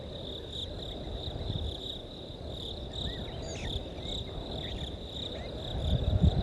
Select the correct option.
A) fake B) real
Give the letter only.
B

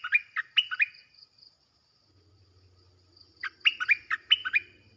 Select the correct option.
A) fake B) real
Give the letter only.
B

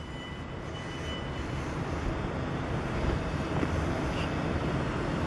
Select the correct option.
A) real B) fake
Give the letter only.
B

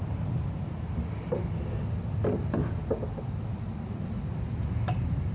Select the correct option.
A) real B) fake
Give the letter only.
A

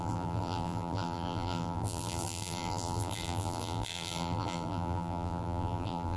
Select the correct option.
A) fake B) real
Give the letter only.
A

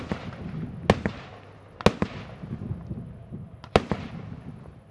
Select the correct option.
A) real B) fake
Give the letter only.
A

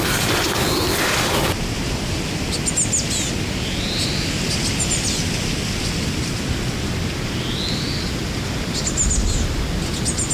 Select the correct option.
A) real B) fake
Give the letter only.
A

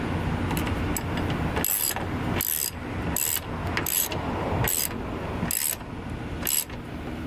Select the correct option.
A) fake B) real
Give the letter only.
B